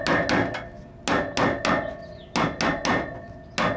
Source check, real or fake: real